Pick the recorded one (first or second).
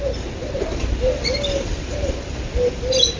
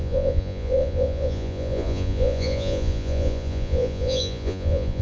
first